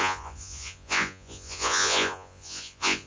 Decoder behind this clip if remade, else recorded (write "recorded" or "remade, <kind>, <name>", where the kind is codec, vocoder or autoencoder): remade, vocoder, Vocos